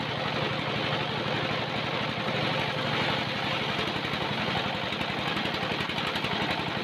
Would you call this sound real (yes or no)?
yes